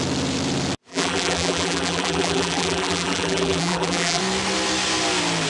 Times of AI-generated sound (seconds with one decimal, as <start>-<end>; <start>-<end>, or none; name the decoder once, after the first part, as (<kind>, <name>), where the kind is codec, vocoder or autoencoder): 0.9-4.2 (vocoder, BigVGAN v2)